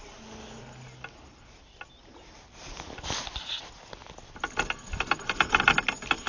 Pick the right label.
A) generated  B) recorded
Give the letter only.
B